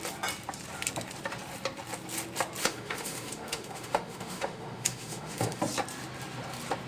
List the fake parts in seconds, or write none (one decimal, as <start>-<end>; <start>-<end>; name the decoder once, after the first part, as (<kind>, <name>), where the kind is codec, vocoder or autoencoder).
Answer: 2.6-5.6 (autoencoder, DAC-VAE)